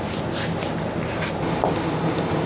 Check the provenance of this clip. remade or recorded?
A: recorded